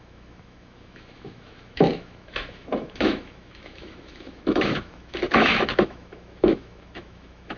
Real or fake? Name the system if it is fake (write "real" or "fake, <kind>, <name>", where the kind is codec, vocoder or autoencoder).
fake, autoencoder, DAC-VAE